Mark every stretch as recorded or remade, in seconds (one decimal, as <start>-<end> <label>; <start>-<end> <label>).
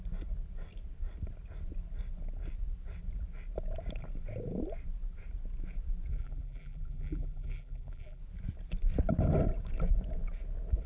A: 0.0-6.1 recorded; 6.1-8.2 remade; 8.2-10.9 recorded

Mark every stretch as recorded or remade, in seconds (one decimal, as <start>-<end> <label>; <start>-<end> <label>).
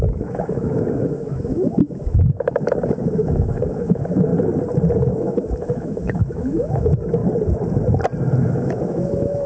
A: 0.0-4.3 remade; 4.3-5.0 recorded; 5.0-7.2 remade; 7.2-8.4 recorded; 8.4-9.5 remade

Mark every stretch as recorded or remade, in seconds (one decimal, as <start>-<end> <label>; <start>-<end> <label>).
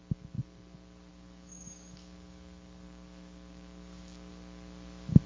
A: 0.0-1.1 recorded; 1.1-4.3 remade; 4.3-5.3 recorded